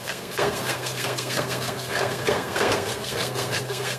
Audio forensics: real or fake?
fake